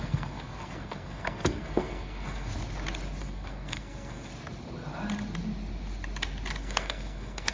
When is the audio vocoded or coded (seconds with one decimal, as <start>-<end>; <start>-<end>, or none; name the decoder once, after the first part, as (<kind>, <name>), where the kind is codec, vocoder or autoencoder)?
0.0-2.5 (codec, SNAC); 3.2-4.3; 6.6-7.5

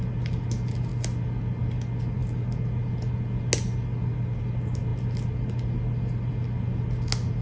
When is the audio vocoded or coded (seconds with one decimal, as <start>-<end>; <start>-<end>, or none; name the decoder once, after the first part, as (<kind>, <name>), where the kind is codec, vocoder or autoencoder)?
none